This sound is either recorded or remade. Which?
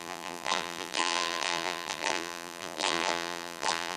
remade